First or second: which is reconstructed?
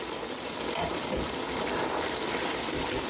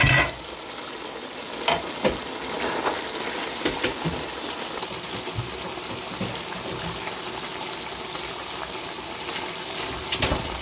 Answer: first